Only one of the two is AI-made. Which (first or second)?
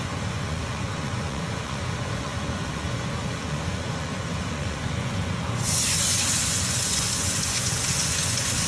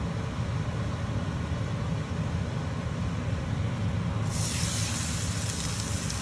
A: first